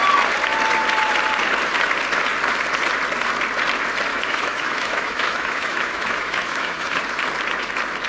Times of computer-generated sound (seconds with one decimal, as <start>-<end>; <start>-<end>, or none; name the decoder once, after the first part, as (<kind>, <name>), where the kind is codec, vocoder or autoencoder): 4.1-7.0 (autoencoder, DAC-VAE)